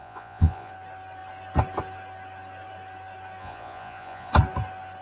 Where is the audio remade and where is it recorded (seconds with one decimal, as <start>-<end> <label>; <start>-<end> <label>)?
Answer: 0.0-0.7 remade; 0.7-3.4 recorded; 3.4-4.3 remade; 4.3-5.0 recorded